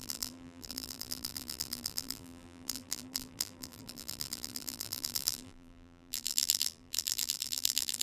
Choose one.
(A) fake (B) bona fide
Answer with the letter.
A